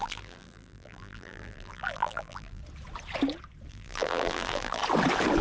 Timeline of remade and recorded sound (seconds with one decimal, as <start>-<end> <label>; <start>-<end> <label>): 0.0-2.6 remade; 2.6-3.7 recorded; 3.7-4.8 remade; 4.8-5.4 recorded